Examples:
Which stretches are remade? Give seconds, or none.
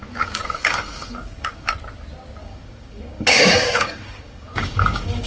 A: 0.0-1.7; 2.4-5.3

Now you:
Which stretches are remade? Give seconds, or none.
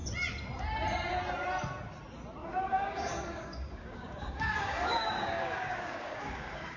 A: 2.4-6.8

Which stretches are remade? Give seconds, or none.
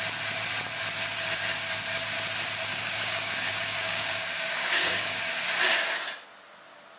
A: 2.7-5.2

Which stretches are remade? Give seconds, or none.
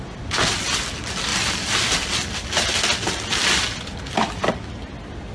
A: none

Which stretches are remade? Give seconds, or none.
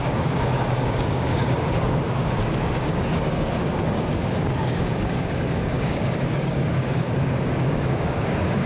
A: 0.0-8.7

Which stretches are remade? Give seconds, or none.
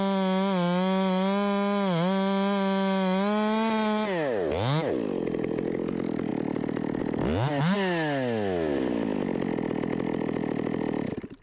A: none